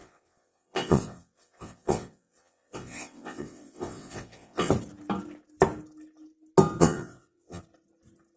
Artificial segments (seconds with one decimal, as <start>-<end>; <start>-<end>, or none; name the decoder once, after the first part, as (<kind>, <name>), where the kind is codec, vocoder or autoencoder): 0.0-4.7 (vocoder, WaveNeXt); 6.8-7.6